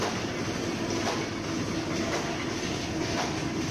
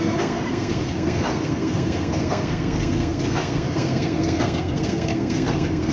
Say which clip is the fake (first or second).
second